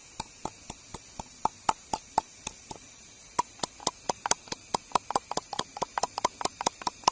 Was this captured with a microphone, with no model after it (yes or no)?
yes